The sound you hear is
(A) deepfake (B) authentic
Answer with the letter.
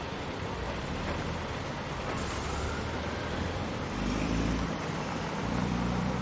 A